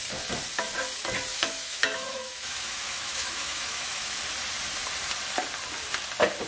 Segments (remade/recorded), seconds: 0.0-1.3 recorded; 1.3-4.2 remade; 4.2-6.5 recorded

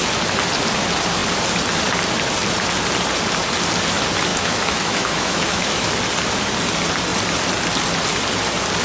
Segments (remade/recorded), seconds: 0.0-4.3 recorded; 4.3-5.9 remade; 5.9-8.8 recorded

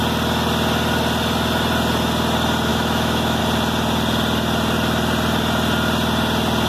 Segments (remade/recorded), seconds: 0.0-2.7 recorded; 2.7-3.4 remade; 3.4-6.7 recorded

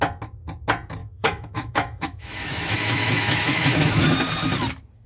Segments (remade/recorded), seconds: 0.0-1.0 recorded; 1.0-4.0 remade; 4.0-5.1 recorded